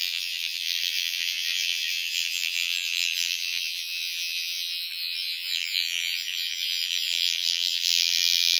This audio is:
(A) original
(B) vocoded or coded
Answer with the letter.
B